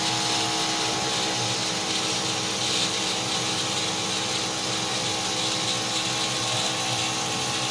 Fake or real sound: real